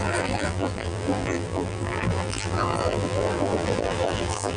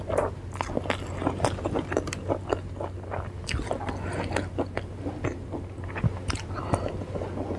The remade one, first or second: first